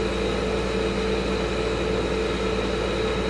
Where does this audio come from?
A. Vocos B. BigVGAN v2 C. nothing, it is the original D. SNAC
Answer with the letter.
C